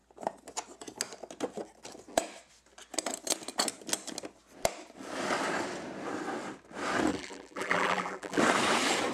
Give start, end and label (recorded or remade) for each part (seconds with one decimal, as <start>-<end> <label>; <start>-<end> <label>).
0.0-7.1 recorded; 7.1-8.4 remade; 8.4-9.1 recorded